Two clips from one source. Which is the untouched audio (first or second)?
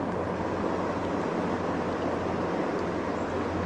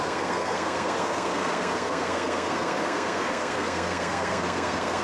first